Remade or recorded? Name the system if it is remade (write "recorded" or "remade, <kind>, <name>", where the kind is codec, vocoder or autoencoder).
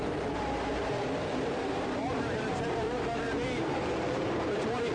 remade, vocoder, BigVGAN v2